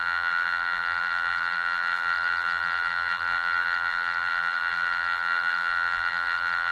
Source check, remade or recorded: remade